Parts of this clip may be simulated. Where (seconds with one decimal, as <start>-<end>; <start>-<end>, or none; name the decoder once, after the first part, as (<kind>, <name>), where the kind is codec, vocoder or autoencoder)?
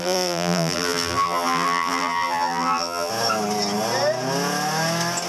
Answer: 0.0-3.1 (vocoder, BigVGAN v2)